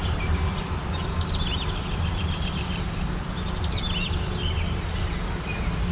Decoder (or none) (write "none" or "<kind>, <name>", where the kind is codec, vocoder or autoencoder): vocoder, BigVGAN v2